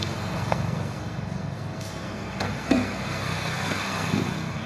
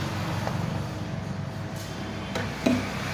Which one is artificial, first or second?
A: first